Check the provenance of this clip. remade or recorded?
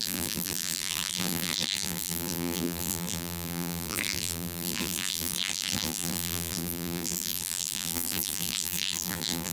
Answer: remade